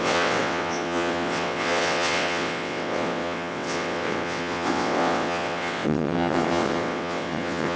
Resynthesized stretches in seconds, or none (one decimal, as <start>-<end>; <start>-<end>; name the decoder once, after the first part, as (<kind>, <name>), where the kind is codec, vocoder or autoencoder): 0.0-7.8 (vocoder, WaveNeXt)